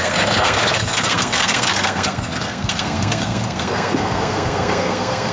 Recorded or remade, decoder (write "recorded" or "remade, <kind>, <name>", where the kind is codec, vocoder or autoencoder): remade, codec, SNAC